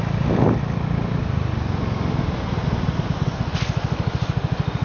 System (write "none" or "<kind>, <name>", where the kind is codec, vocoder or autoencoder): none